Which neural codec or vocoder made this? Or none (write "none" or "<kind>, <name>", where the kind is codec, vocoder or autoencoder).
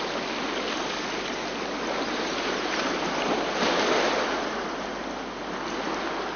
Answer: none